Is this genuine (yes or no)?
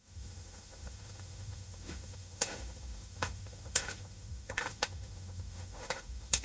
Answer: no